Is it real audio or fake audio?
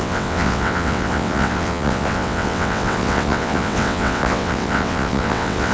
fake